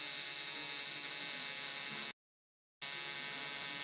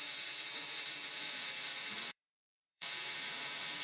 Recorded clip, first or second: first